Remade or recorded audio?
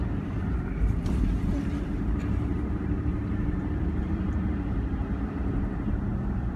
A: remade